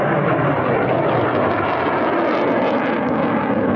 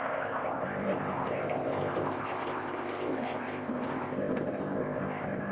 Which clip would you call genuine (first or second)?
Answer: first